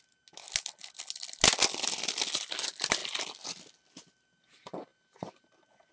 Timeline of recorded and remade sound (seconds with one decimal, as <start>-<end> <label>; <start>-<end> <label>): 0.0-5.9 recorded